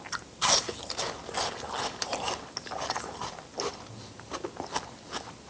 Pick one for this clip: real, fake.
real